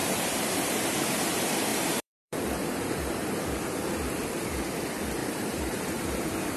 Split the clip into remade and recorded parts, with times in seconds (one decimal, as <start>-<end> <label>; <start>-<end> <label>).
0.0-0.7 remade; 0.7-1.7 recorded; 1.7-3.3 remade; 3.3-5.2 recorded; 5.2-6.0 remade; 6.0-6.6 recorded